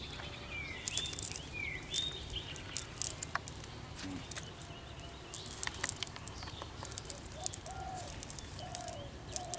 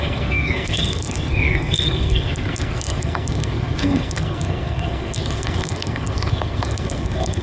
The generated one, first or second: second